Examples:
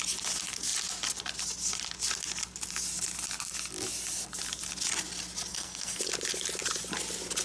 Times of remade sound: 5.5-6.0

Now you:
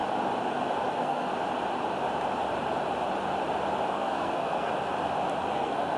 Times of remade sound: 0.9-1.3; 3.9-4.7; 5.5-6.0

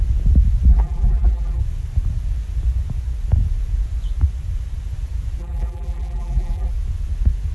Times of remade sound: 0.7-1.6; 5.4-6.7

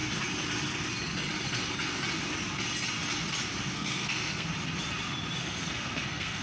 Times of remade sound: 3.6-4.5; 5.4-6.4

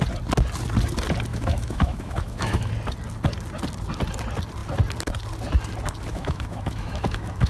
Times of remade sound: 1.3-2.7; 6.1-7.5

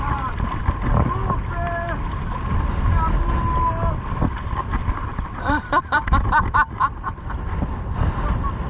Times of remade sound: 5.1-6.0

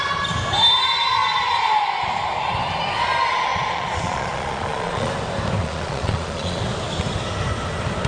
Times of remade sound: 3.5-5.1; 5.6-6.6